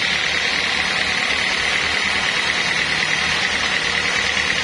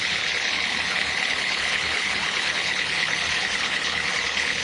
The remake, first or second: second